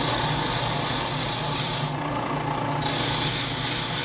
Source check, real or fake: real